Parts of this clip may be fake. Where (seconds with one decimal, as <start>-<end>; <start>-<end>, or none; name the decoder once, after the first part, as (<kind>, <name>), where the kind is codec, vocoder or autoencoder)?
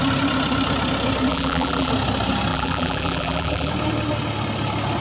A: 1.3-1.9 (vocoder, BigVGAN v2); 2.5-3.7